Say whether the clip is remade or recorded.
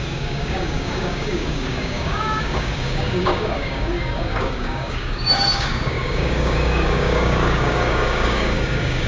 remade